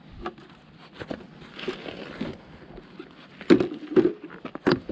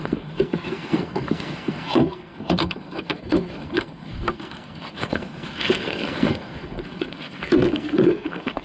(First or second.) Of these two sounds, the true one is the first